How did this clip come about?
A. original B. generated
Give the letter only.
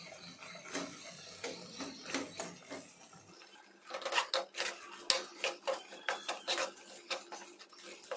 A